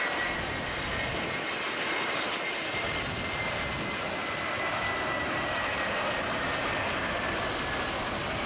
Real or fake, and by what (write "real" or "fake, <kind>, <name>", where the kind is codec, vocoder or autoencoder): real